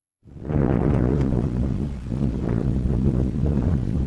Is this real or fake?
fake